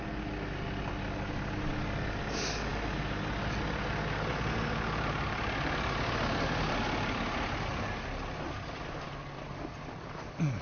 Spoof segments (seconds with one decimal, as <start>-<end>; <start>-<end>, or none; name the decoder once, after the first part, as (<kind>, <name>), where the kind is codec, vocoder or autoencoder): none